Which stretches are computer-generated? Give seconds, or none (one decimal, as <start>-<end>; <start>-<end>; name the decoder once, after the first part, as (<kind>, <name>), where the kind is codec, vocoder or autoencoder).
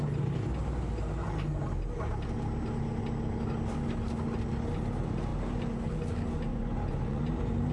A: 6.5-7.2 (vocoder, Vocos)